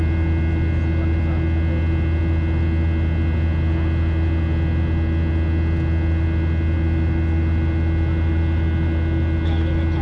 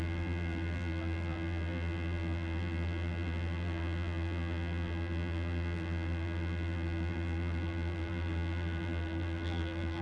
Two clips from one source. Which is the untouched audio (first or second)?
first